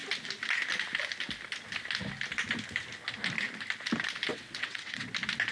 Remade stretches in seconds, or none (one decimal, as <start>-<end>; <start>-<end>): 4.3-5.1